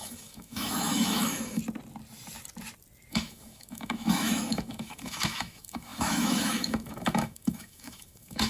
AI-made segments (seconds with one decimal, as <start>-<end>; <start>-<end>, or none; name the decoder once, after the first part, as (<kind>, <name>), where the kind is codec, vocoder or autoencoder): 0.0-1.6 (autoencoder, DAC-VAE); 3.1-8.5